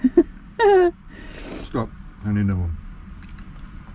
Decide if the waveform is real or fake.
real